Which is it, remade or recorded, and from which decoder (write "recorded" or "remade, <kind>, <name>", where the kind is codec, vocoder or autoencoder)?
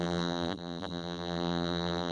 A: remade, vocoder, BigVGAN v2